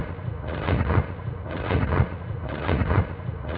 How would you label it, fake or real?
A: fake